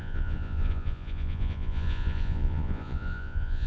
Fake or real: fake